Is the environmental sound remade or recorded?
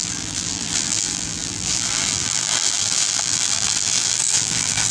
remade